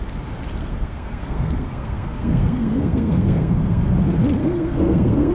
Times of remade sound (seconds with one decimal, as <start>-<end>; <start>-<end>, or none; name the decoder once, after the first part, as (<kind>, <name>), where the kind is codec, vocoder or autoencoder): 0.6-3.8 (codec, SNAC); 4.4-5.3

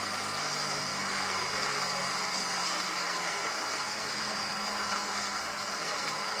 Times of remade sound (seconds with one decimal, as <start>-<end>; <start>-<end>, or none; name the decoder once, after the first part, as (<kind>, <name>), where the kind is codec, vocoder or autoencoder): 0.0-6.4 (codec, SNAC)

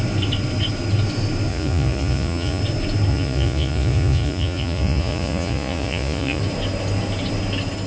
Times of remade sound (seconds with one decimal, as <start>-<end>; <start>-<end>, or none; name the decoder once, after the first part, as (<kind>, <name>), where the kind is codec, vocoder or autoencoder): 1.5-2.6 (vocoder, Vocos); 3.1-6.4